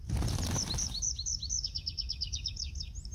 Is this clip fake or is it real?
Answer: real